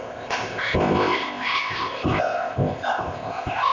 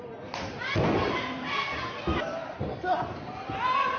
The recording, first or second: second